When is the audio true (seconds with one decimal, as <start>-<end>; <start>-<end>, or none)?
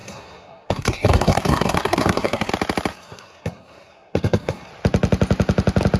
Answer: 2.5-2.9; 4.7-6.0